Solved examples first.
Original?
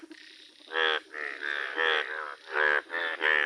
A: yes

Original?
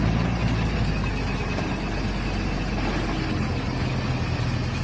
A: yes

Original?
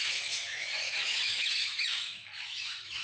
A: no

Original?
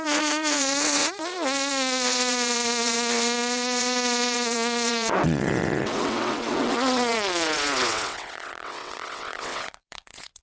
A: no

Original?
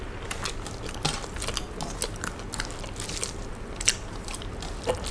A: yes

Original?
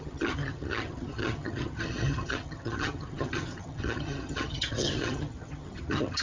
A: no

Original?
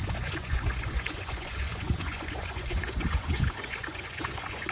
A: no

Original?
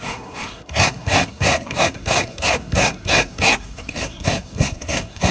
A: no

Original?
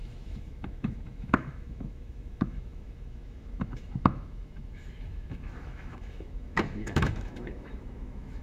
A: no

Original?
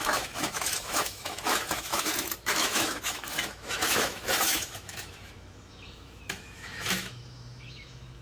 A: no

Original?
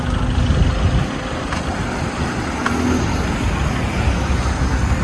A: yes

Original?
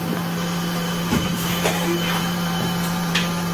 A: no